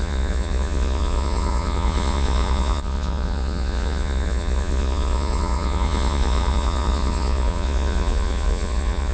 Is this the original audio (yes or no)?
no